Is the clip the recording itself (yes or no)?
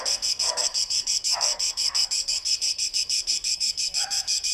no